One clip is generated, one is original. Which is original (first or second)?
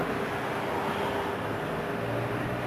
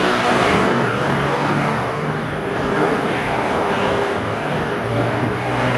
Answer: first